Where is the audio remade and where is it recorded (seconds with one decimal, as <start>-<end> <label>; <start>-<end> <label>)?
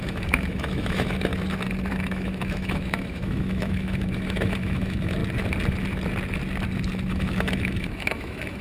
0.0-1.3 remade; 1.3-1.9 recorded; 1.9-5.2 remade; 5.2-7.1 recorded; 7.1-8.6 remade